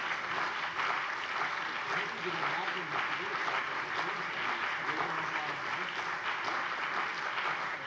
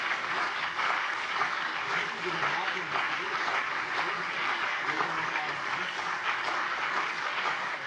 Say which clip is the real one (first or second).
first